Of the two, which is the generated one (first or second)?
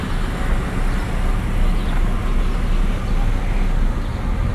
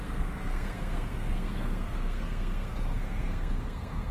second